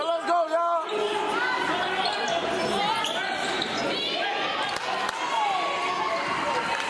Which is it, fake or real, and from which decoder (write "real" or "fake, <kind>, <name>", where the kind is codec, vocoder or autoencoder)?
real